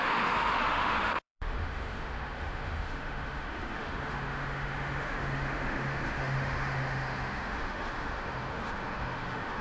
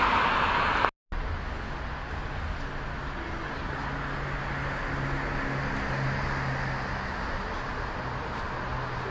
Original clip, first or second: second